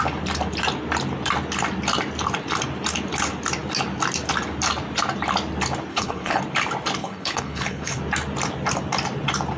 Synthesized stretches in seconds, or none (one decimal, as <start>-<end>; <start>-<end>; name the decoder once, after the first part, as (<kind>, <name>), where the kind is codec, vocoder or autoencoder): 5.9-6.4 (codec, HILCodec); 7.0-8.0